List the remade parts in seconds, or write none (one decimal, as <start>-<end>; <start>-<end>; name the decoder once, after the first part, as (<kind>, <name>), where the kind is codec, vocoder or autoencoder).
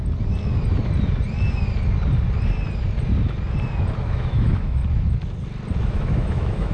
4.0-4.8 (autoencoder, DAC-VAE); 5.8-6.7